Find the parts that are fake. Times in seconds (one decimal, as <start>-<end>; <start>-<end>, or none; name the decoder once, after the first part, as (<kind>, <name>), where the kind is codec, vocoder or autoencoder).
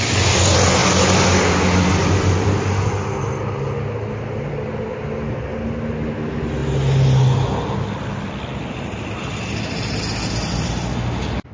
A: none